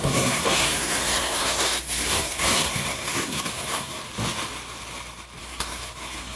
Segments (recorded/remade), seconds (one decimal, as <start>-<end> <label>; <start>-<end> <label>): 0.0-4.0 remade; 4.0-5.4 recorded; 5.4-6.4 remade